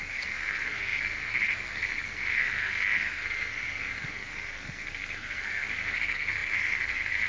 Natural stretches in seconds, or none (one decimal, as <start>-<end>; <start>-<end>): none